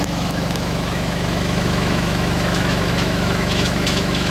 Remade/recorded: remade